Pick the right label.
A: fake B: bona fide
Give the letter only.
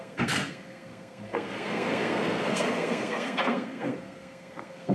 A